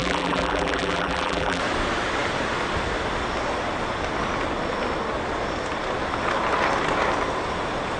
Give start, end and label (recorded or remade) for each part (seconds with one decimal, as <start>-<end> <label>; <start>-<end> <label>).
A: 0.0-1.6 remade; 1.6-8.0 recorded